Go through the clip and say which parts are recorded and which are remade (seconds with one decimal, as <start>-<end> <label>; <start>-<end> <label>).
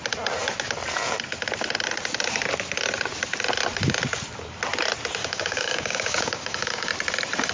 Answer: 0.0-5.2 recorded; 5.2-6.9 remade; 6.9-7.5 recorded